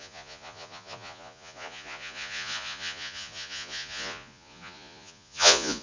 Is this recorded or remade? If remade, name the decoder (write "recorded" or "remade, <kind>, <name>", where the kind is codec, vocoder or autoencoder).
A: remade, vocoder, Vocos